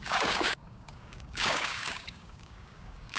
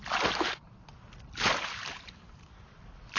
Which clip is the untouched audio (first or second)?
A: second